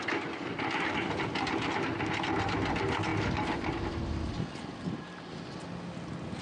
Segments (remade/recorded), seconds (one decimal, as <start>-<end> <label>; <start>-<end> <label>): 0.0-6.4 recorded